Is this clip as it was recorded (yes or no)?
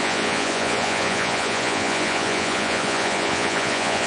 no